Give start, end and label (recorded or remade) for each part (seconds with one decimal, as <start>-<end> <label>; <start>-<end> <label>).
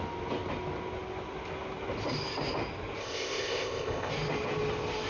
0.0-3.0 recorded; 3.0-4.1 remade; 4.1-5.1 recorded